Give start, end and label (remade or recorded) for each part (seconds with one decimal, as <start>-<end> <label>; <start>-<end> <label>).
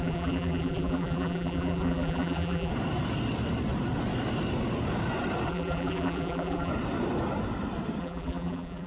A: 0.0-2.7 remade; 2.7-5.5 recorded; 5.5-6.7 remade; 6.7-8.0 recorded; 8.0-8.9 remade